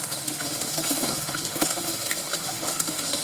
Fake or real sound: fake